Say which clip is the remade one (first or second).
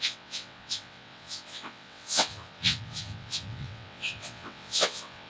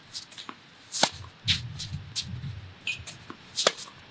first